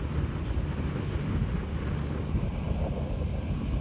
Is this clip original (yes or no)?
yes